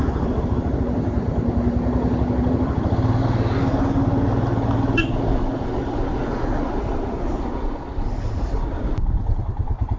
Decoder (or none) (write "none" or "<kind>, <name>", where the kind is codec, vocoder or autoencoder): none